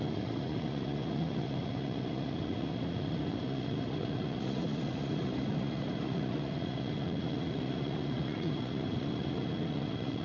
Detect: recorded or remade remade